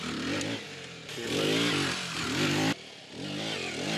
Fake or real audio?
real